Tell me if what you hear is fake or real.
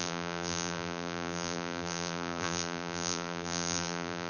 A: fake